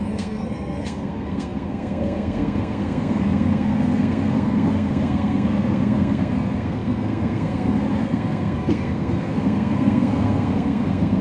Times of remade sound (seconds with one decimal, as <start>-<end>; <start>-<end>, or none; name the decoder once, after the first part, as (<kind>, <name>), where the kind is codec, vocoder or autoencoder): 0.0-11.2 (codec, SNAC)